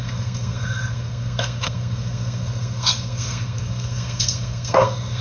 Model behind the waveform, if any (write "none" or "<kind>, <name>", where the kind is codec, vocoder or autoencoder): codec, SNAC